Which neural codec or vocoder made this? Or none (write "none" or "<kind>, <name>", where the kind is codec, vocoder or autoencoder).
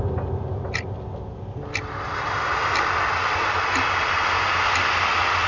none